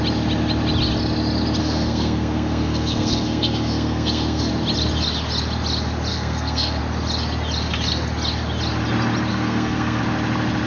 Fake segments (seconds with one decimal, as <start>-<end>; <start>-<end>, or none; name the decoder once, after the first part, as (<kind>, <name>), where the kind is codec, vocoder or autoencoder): 1.6-4.5 (codec, SNAC); 6.1-6.8; 9.3-10.0